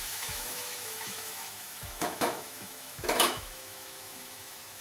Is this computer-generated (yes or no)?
yes